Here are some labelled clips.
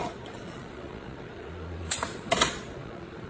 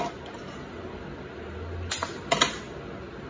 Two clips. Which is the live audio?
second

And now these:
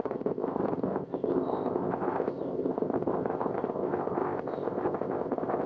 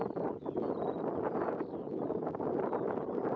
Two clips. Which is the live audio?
second